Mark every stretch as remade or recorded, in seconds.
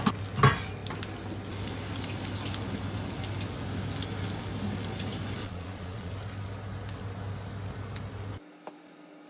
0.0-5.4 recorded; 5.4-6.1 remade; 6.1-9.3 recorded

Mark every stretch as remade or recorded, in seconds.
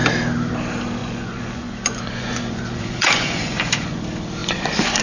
0.0-1.0 recorded; 1.0-4.0 remade; 4.0-4.4 recorded; 4.4-5.0 remade